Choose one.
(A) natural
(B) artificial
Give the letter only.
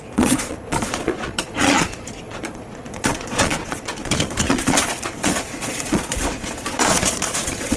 B